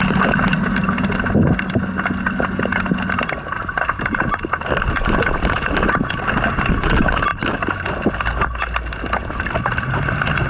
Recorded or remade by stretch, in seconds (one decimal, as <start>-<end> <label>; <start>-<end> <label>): 0.0-10.5 recorded